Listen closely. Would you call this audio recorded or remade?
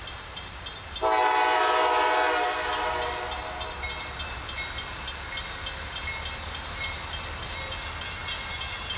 recorded